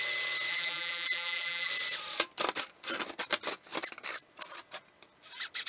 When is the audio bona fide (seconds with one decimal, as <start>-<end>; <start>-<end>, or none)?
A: 0.0-0.5; 1.7-5.7